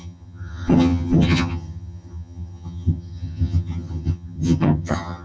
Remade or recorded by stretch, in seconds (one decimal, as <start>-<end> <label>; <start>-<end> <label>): 0.0-5.2 remade